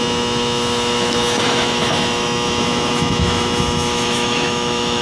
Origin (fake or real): fake